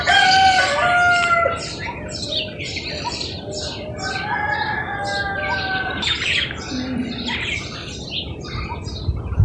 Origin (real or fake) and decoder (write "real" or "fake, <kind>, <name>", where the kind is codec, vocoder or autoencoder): real